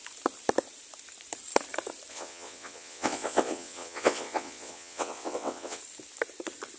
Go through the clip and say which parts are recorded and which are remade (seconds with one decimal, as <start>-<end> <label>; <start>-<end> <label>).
0.0-2.1 recorded; 2.1-5.8 remade; 5.8-6.8 recorded